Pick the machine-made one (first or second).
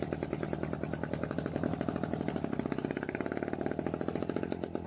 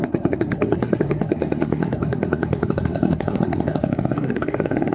second